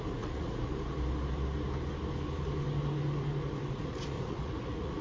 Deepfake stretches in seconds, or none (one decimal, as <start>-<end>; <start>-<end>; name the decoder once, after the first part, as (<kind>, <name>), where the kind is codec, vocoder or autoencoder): 0.0-0.7 (vocoder, Vocos); 3.7-5.0